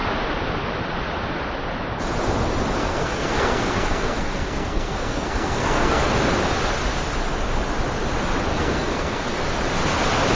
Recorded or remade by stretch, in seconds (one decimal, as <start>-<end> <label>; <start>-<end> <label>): 0.0-2.8 recorded; 2.8-6.1 remade; 6.1-8.5 recorded; 8.5-9.3 remade; 9.3-10.4 recorded